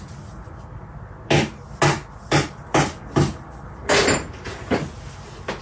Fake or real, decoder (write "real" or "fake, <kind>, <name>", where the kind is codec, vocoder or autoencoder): real